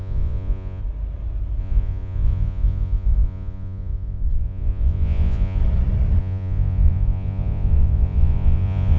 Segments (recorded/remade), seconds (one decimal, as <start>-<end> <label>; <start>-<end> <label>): 0.0-0.8 remade; 0.8-1.6 recorded; 1.6-5.6 remade; 5.6-6.2 recorded; 6.2-9.0 remade